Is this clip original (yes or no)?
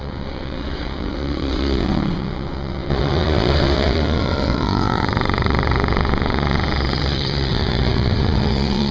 no